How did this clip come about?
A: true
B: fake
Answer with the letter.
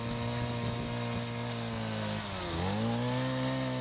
A